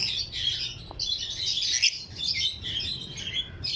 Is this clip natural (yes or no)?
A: yes